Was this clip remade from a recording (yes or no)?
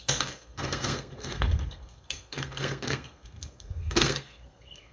yes